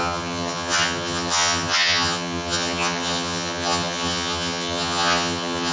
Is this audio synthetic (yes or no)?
yes